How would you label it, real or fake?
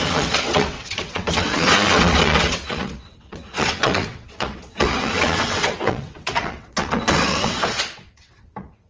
fake